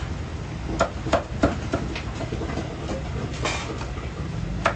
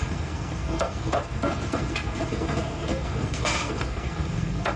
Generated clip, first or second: second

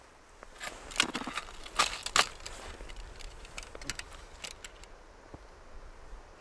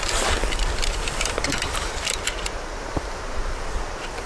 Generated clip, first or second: second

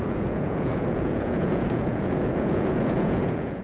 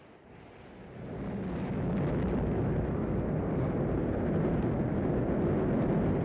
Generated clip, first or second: first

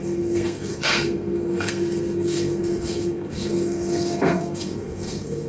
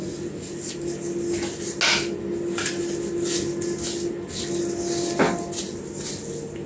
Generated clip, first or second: first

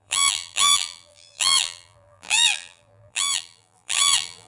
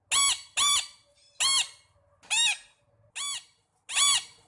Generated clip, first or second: first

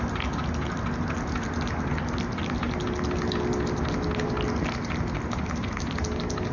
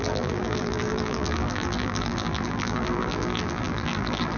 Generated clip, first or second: second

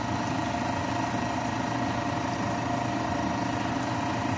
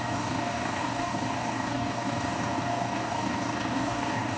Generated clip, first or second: second